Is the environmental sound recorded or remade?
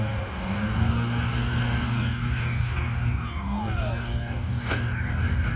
remade